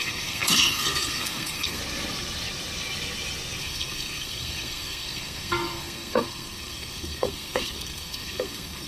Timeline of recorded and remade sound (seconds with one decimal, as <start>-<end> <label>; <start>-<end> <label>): 0.0-1.8 remade; 1.8-3.6 recorded; 3.6-8.9 remade